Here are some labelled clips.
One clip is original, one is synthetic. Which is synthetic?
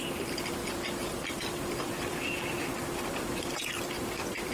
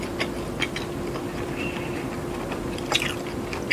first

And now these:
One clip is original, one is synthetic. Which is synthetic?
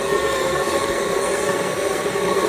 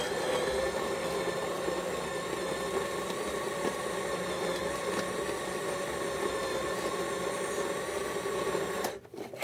first